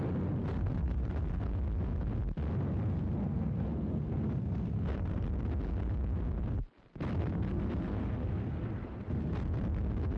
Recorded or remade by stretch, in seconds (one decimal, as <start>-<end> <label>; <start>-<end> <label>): 0.0-0.5 recorded; 0.5-1.4 remade; 1.4-3.2 recorded; 3.2-5.2 remade; 5.2-7.2 recorded; 7.2-8.7 remade; 8.7-10.2 recorded